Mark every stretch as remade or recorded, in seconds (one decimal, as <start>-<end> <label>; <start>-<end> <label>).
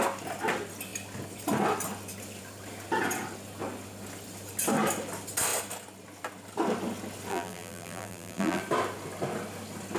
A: 0.0-7.3 recorded; 7.3-8.6 remade; 8.6-10.0 recorded